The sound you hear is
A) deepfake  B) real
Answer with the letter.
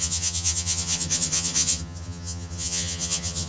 A